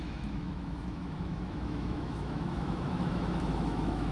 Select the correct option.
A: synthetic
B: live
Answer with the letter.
A